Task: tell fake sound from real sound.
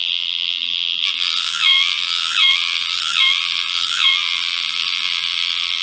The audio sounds fake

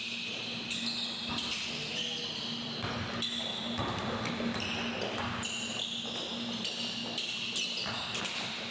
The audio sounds real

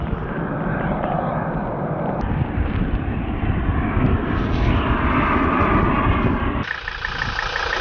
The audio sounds fake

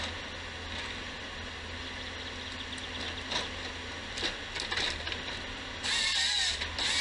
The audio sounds real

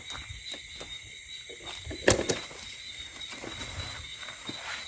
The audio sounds real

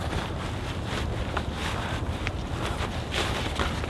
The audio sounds real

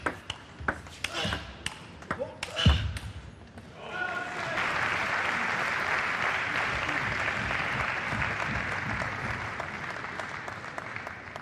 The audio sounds real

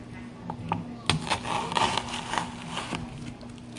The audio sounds real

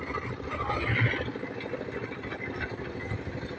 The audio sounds real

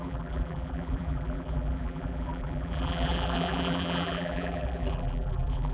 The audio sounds fake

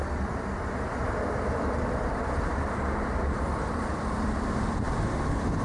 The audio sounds fake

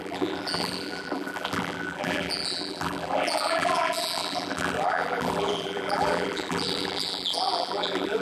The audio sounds fake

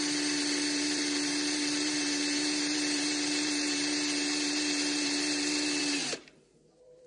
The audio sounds fake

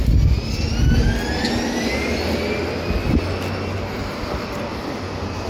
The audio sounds real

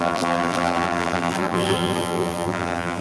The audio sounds fake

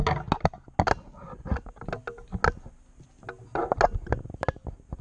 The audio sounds real